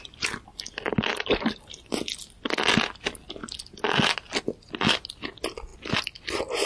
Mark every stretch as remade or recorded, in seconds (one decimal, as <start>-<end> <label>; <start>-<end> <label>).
0.0-6.7 recorded

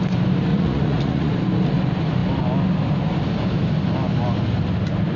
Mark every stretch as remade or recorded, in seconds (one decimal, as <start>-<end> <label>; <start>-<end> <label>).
0.0-0.5 recorded; 0.5-1.3 remade; 1.3-5.2 recorded

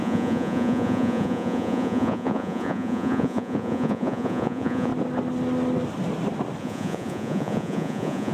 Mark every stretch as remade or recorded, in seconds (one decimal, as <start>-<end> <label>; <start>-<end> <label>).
0.0-4.9 remade; 4.9-6.6 recorded; 6.6-8.3 remade

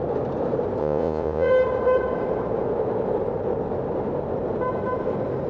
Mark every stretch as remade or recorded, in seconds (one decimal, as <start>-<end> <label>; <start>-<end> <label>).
0.0-0.8 recorded; 0.8-1.5 remade; 1.5-5.5 recorded

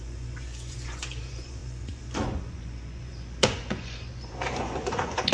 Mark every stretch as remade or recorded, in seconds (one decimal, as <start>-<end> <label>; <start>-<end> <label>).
0.0-5.3 remade

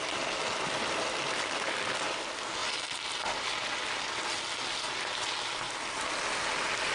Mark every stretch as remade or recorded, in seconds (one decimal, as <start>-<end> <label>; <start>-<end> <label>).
0.0-6.9 recorded

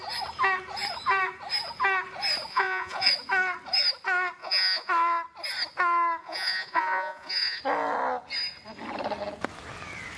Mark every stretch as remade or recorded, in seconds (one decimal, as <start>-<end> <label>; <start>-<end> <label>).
0.0-2.5 recorded; 2.5-3.1 remade; 3.1-4.4 recorded; 4.4-4.9 remade; 4.9-6.2 recorded; 6.2-7.6 remade; 7.6-10.2 recorded

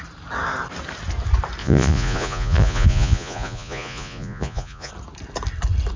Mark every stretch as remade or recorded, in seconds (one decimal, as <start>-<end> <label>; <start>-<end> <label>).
0.0-1.6 recorded; 1.6-4.9 remade; 4.9-6.0 recorded